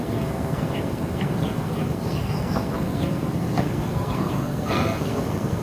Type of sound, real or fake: fake